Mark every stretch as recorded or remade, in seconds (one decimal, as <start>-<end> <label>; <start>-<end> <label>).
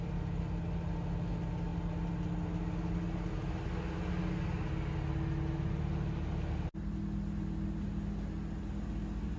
0.0-9.4 recorded